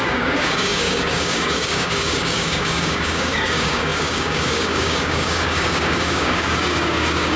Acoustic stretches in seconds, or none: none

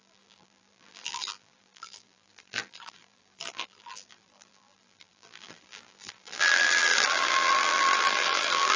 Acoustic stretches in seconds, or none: none

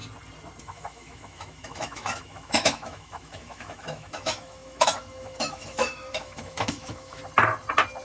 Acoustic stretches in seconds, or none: 0.0-0.6; 7.2-8.0

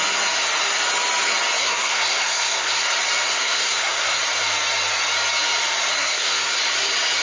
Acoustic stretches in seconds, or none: 0.0-1.6; 2.9-3.3; 4.2-5.9; 6.6-7.2

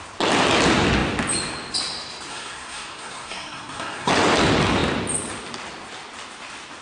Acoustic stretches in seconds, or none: 0.0-2.3; 4.1-6.8

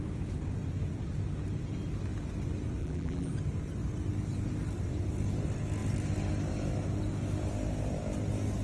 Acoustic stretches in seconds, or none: 0.0-2.8; 3.3-8.6

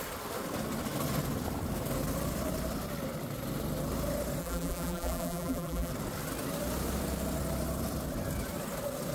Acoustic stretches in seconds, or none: 0.0-4.4; 5.9-9.1